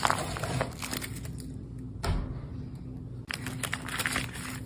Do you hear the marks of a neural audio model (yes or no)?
no